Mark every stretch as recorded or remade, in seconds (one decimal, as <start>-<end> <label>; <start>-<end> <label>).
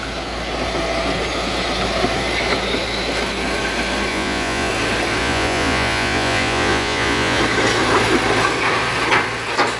0.0-4.1 recorded; 4.1-4.7 remade; 4.7-5.2 recorded; 5.2-7.4 remade; 7.4-9.8 recorded